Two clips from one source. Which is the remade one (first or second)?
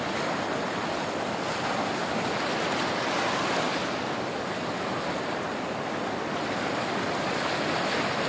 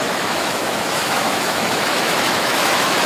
second